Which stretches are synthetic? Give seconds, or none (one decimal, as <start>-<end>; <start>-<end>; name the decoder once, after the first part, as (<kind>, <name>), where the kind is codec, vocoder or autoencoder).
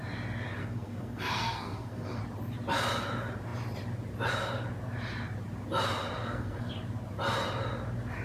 0.6-2.2 (codec, SNAC); 6.2-6.7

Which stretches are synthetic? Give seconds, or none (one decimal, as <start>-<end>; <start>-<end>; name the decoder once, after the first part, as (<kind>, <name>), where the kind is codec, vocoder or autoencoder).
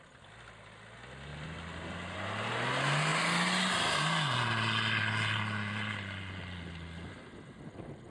none